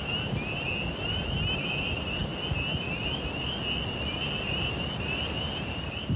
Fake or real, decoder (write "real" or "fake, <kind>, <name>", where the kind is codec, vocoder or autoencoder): real